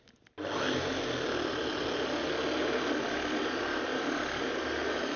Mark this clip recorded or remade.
recorded